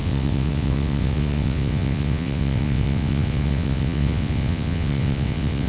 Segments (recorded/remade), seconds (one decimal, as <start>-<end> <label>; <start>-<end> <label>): 0.0-5.7 remade